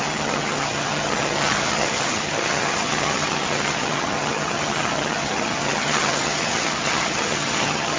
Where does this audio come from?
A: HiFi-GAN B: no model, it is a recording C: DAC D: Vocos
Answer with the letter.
A